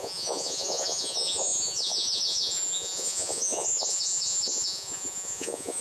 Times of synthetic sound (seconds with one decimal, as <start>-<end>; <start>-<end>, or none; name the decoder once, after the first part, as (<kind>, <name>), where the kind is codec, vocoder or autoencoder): 0.0-5.8 (vocoder, Vocos)